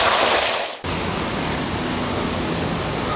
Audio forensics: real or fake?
real